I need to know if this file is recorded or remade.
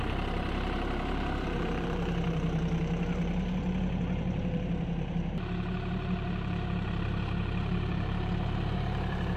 remade